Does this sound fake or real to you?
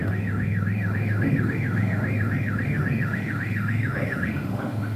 fake